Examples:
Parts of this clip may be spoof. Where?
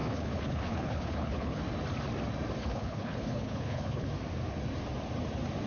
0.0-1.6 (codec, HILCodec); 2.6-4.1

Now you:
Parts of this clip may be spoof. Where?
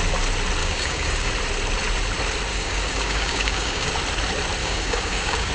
0.6-1.3 (codec, DAC); 2.5-3.9; 4.6-5.5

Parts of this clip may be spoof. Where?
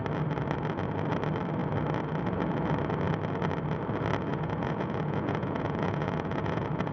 4.3-6.9 (vocoder, Vocos)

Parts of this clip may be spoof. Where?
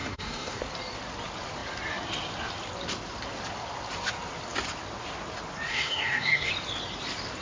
0.0-0.6 (codec, SNAC); 5.7-6.5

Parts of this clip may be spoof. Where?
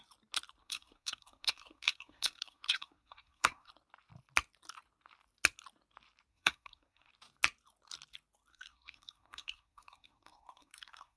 0.6-3.7 (codec, SNAC); 6.3-7.1; 8.5-11.2